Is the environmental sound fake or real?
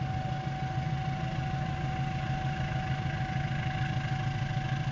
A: real